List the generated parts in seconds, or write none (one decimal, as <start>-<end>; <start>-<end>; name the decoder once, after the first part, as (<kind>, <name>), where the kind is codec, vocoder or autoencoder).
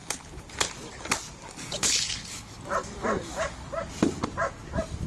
1.7-2.5 (codec, HILCodec)